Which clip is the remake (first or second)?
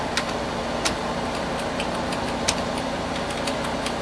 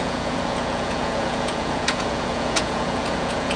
second